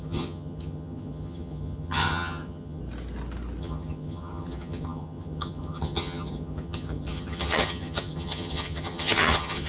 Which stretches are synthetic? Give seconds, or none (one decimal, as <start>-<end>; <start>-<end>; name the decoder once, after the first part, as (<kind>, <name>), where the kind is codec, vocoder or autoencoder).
0.0-2.8 (vocoder, HiFi-GAN); 3.6-9.7